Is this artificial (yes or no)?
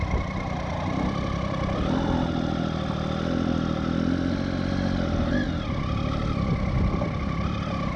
no